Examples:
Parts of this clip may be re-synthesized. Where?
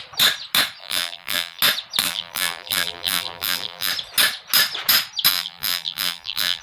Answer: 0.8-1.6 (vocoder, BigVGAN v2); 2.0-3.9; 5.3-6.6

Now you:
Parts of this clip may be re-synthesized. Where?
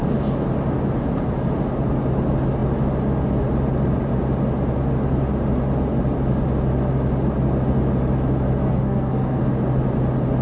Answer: 8.6-9.4 (codec, SNAC)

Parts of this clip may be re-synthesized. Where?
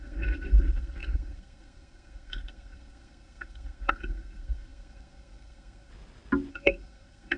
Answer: 0.0-5.9 (codec, SNAC); 6.5-7.4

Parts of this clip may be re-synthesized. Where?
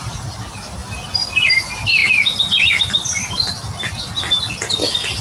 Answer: 0.0-0.8 (vocoder, BigVGAN v2); 1.5-2.0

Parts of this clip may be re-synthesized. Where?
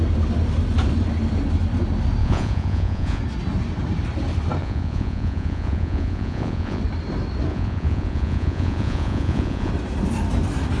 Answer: 2.2-3.2 (vocoder, Vocos); 4.6-6.8; 7.5-9.7